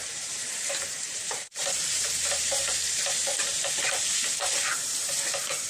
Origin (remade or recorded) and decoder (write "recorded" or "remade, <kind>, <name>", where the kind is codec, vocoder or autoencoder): remade, vocoder, BigVGAN v2